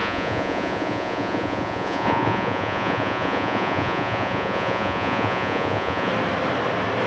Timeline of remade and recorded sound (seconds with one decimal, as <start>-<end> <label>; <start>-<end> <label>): 0.0-6.1 remade; 6.1-7.1 recorded